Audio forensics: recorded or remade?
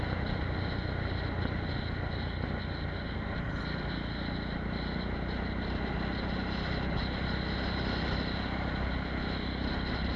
recorded